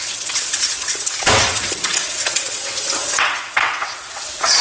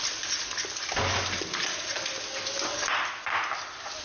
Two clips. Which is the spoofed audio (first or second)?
first